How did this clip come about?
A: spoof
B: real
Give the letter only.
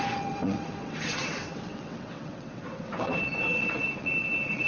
A